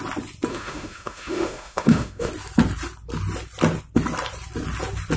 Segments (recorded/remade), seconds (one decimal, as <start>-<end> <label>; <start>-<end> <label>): 0.0-0.5 recorded; 0.5-2.3 remade; 2.3-5.2 recorded